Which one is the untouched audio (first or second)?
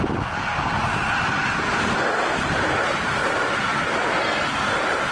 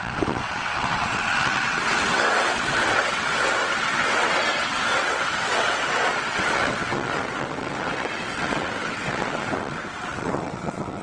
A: first